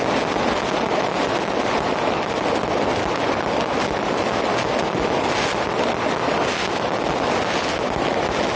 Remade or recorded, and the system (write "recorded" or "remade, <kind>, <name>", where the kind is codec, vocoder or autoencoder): recorded